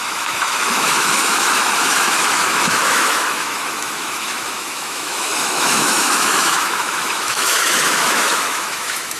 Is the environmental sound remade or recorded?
remade